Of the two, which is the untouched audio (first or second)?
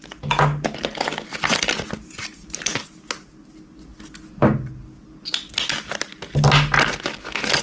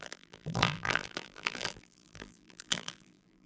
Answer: first